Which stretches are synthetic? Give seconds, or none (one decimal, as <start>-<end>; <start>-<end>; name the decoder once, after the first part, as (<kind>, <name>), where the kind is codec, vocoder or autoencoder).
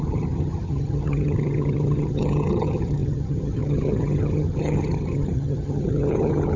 0.0-6.6 (vocoder, HiFi-GAN)